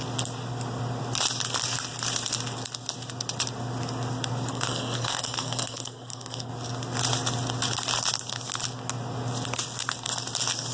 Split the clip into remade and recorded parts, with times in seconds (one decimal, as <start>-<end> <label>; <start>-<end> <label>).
0.0-4.5 recorded; 4.5-6.5 remade; 6.5-10.7 recorded